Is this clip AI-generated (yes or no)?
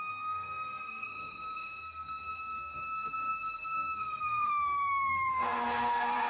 yes